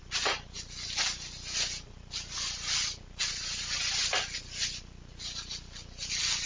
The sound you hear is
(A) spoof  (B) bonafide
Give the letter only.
B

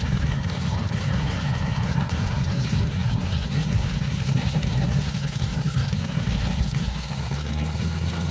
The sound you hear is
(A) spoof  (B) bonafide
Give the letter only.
A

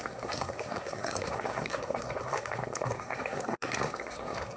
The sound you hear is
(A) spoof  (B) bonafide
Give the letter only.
A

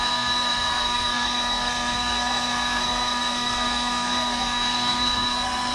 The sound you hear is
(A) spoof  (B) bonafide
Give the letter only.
A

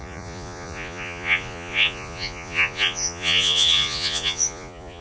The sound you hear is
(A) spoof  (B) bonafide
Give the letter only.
A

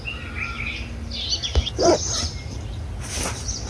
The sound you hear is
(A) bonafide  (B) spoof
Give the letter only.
A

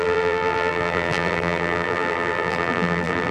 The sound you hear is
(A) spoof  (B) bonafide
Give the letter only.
A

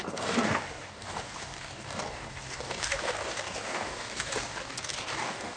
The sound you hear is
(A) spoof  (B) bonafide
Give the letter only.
A